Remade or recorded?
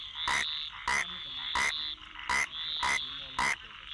recorded